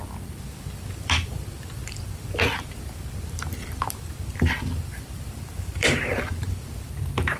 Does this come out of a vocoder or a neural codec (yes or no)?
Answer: yes